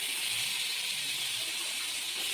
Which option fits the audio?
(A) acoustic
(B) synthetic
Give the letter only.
A